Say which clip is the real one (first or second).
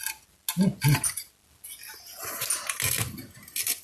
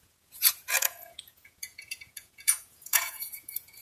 first